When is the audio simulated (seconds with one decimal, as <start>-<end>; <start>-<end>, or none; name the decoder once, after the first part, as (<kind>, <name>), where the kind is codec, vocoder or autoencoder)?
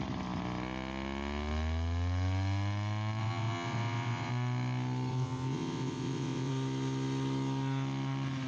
3.2-4.3 (vocoder, WaveNeXt); 5.1-6.5